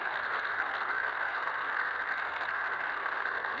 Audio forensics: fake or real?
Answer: fake